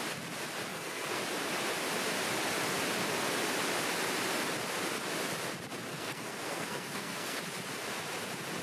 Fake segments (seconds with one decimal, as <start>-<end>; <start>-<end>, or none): 0.7-1.2; 5.9-7.4